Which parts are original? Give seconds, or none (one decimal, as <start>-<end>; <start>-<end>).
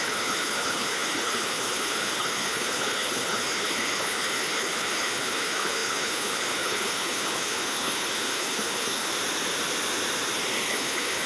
9.1-10.7